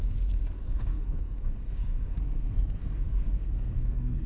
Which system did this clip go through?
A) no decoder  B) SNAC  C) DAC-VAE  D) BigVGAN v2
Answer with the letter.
B